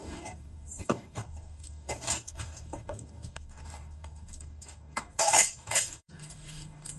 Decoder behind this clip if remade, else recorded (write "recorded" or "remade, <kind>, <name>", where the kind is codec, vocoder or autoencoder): remade, codec, DAC